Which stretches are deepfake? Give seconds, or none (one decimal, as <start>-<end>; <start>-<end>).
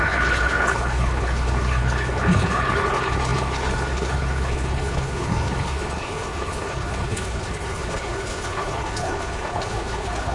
0.0-10.3